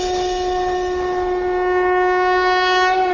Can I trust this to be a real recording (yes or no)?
yes